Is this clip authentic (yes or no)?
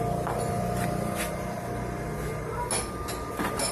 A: yes